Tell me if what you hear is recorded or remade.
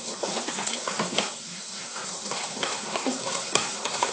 remade